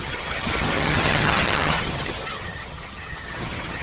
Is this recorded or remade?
remade